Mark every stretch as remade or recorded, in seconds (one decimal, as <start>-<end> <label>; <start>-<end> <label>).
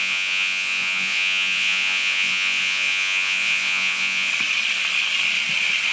0.0-4.3 remade; 4.3-5.9 recorded